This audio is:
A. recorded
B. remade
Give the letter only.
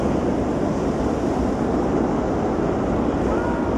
A